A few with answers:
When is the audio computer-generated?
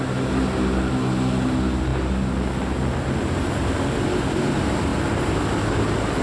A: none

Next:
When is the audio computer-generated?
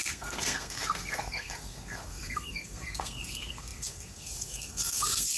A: 0.0-5.4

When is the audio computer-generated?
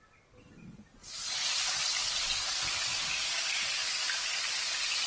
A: none